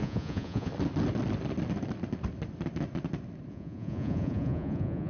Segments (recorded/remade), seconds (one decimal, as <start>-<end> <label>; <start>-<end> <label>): 0.0-0.7 remade; 0.7-3.5 recorded; 3.5-5.1 remade